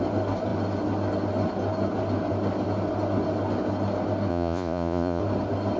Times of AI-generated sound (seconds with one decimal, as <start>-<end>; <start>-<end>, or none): 4.3-5.2